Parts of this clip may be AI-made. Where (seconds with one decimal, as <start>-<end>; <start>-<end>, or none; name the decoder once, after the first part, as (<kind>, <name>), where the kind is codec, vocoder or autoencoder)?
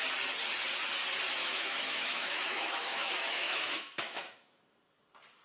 1.4-4.6 (autoencoder, DAC-VAE)